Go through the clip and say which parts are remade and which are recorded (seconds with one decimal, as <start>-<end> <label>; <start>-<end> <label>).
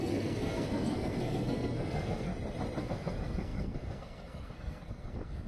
0.0-2.3 remade; 2.3-2.8 recorded; 2.8-5.5 remade